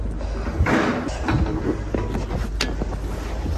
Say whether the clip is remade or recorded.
recorded